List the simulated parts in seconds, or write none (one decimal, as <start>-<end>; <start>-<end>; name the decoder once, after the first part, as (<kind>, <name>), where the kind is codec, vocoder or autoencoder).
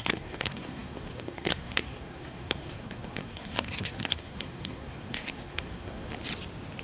0.0-6.1 (codec, SNAC)